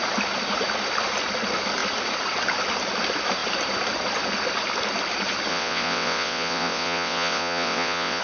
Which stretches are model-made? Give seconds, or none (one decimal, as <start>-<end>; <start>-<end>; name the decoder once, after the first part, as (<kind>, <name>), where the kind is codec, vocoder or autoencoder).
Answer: 5.5-8.2 (vocoder, WaveNeXt)